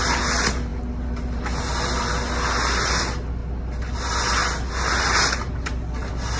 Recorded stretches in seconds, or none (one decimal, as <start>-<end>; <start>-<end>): 0.0-6.4